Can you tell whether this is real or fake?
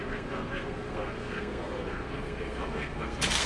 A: fake